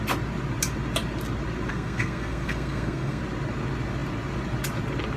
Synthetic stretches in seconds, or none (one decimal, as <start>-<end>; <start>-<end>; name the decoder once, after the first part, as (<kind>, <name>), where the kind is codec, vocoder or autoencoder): 1.7-3.2 (codec, SNAC)